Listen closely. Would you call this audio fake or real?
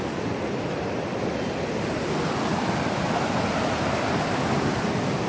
real